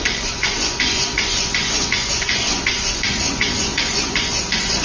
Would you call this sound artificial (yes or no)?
yes